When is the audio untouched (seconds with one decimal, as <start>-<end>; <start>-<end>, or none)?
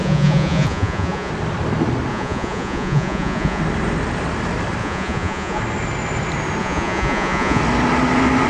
1.3-2.1; 3.6-4.8; 5.6-6.6; 7.6-8.5